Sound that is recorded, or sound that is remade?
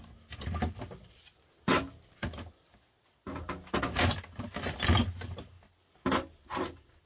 recorded